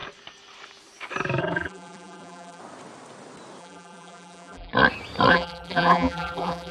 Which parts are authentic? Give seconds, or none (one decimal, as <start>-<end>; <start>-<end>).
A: 0.0-1.4; 2.6-3.6; 4.7-5.3